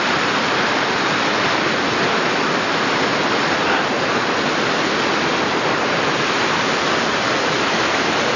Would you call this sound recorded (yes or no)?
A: yes